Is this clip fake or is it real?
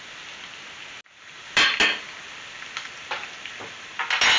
real